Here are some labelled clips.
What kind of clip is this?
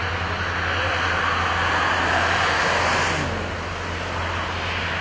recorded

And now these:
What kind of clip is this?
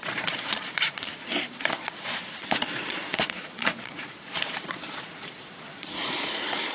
remade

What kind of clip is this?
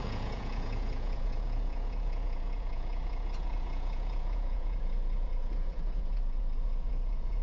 remade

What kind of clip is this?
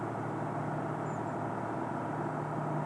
recorded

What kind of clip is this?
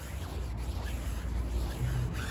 recorded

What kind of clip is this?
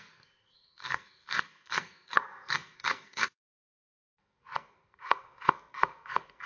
remade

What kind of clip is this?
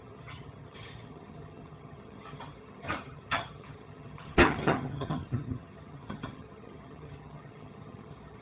remade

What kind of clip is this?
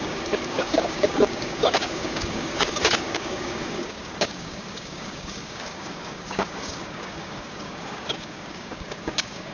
remade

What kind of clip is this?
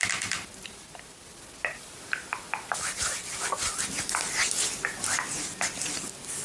recorded